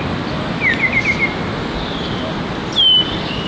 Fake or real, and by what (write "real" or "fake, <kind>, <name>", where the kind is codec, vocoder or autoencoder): real